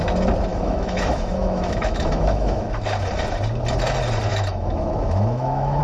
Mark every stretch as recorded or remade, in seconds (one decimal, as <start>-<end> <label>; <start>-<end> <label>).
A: 0.0-0.5 recorded; 0.5-2.7 remade; 2.7-4.3 recorded; 4.3-5.8 remade